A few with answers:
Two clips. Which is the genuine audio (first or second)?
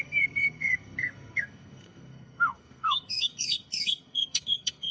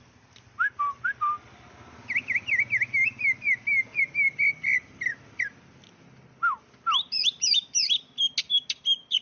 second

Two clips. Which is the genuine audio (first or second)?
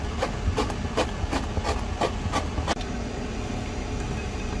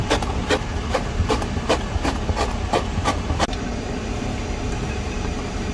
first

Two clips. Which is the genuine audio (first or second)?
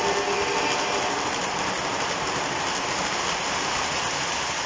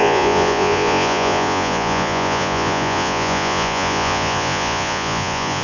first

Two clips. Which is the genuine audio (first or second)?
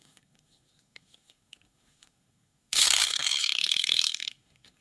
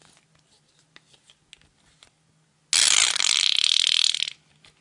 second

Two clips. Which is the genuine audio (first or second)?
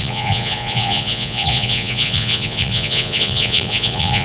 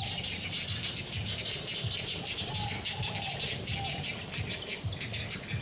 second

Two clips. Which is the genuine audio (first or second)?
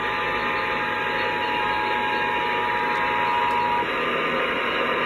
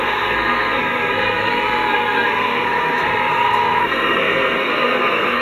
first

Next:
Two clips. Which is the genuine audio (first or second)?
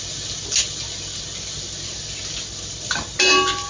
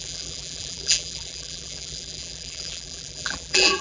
first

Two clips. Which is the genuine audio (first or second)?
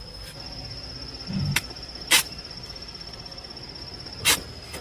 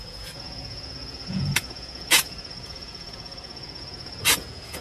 first